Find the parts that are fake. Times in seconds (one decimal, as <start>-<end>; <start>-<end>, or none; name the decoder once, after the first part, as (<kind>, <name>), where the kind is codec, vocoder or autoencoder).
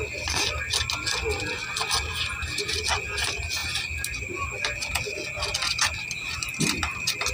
none